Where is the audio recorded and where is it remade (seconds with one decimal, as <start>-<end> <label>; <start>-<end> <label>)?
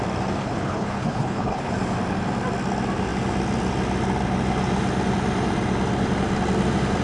0.0-0.4 recorded; 0.4-1.7 remade; 1.7-7.0 recorded